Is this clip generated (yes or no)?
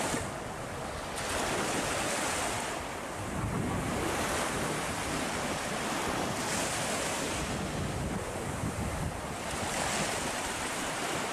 no